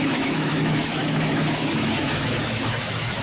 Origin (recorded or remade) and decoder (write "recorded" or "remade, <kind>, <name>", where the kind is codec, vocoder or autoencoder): remade, autoencoder, DAC-VAE